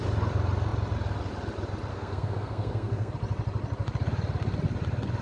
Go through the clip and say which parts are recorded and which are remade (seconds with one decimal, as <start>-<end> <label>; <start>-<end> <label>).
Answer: 0.0-1.9 recorded; 1.9-3.1 remade; 3.1-5.2 recorded